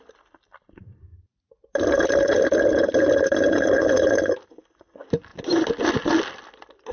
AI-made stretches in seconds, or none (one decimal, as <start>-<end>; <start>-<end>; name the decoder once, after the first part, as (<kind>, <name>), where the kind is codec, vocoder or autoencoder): none